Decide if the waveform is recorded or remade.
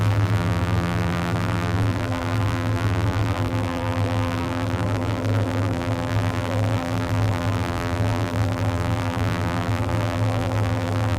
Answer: remade